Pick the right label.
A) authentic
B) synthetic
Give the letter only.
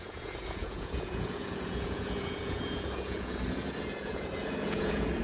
B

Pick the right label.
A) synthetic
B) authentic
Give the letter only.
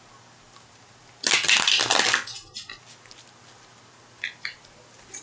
B